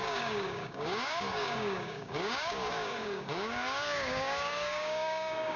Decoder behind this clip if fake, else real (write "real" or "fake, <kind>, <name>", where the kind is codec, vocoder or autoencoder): fake, codec, DAC